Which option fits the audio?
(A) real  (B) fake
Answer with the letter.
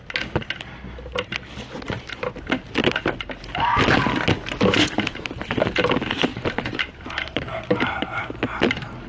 A